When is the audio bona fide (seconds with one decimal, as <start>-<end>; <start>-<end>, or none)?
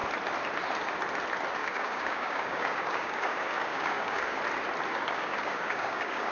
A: 0.0-1.6; 4.4-4.9